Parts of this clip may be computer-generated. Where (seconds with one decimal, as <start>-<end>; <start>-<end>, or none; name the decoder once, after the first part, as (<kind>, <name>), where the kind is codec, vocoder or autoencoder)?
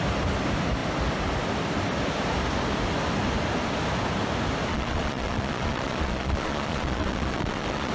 4.7-7.9 (vocoder, Vocos)